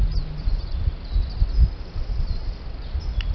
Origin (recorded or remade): recorded